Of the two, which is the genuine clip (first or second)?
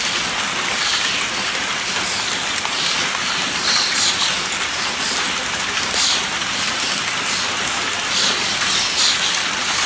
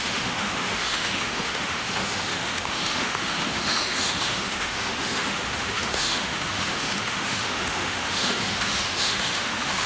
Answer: first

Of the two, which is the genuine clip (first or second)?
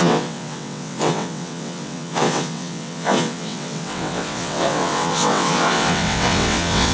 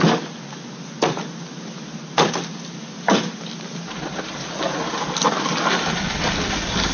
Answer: second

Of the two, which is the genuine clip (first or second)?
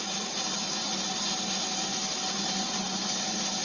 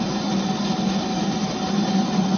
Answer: first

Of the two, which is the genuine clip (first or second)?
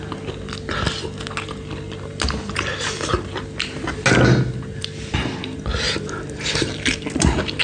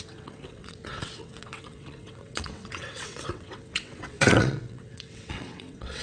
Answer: first